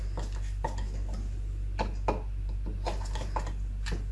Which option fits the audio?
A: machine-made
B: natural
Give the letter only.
B